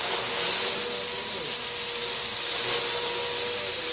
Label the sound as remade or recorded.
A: recorded